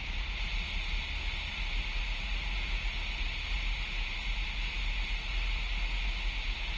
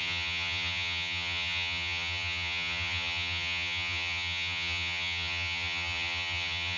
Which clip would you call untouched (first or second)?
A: first